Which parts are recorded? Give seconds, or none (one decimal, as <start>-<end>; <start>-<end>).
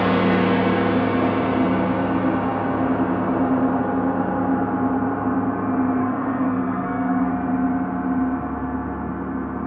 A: 0.0-6.0; 7.3-9.7